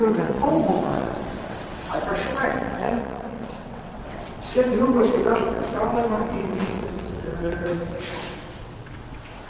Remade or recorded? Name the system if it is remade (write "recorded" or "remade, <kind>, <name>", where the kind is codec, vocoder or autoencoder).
remade, vocoder, WaveNeXt